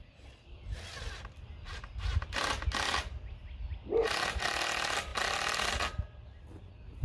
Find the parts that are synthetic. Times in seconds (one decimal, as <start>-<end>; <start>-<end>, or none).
none

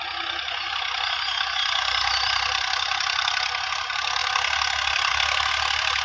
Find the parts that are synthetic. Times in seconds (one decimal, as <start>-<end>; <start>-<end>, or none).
none

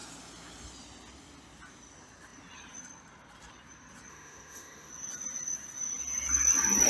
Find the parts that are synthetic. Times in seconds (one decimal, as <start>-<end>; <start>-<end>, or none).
4.1-4.9

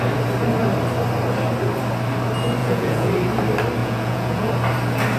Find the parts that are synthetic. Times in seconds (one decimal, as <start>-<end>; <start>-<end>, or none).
2.6-3.1; 3.8-4.5

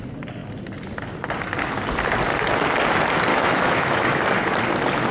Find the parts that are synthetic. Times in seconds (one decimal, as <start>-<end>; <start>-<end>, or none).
3.3-4.2

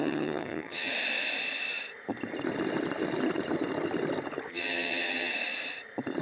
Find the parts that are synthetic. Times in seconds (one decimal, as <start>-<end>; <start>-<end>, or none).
0.0-0.9; 4.5-5.3